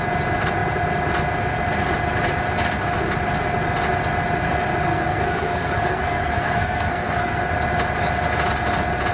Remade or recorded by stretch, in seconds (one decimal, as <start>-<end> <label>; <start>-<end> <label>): 0.0-4.9 recorded; 4.9-7.4 remade; 7.4-9.1 recorded